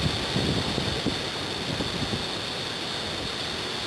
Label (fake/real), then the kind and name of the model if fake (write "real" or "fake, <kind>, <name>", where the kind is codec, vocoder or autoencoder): real